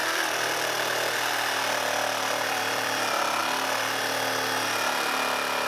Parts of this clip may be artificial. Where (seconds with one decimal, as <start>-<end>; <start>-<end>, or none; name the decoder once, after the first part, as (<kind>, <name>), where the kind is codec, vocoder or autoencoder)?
0.0-3.4 (vocoder, BigVGAN v2)